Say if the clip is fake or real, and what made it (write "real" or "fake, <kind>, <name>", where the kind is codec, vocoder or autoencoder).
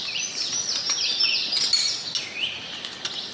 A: real